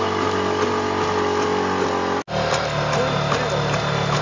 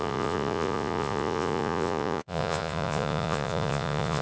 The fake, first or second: second